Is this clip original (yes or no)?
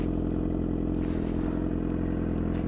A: yes